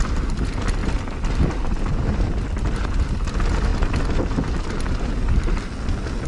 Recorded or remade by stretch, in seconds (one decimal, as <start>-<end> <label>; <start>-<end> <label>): 0.0-6.3 recorded